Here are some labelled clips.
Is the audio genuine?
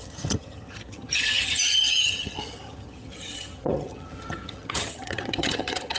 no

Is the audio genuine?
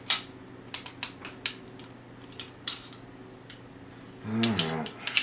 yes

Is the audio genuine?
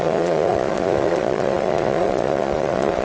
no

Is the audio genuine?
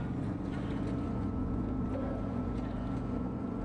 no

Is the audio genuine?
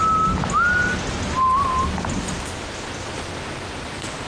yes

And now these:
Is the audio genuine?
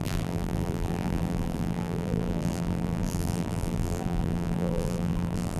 no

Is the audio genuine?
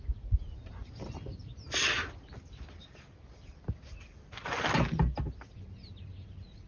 yes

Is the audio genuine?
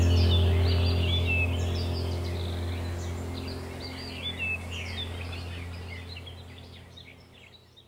yes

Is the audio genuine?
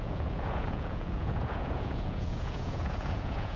no